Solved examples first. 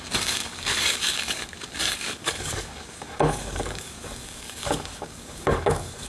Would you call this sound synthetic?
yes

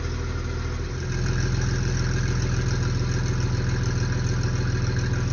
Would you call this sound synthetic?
no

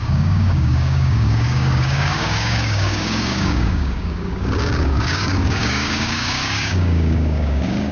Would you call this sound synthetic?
yes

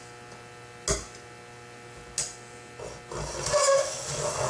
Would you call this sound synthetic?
no